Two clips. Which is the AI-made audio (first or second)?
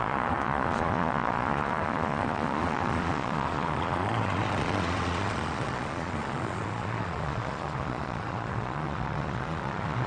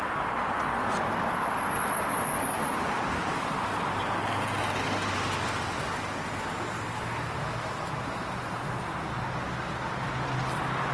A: first